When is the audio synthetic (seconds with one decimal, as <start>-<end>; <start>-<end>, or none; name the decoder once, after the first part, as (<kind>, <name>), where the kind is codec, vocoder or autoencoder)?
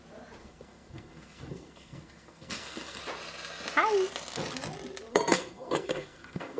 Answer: 0.4-3.0 (codec, SNAC); 5.1-6.6